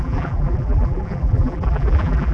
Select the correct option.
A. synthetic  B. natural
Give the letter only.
A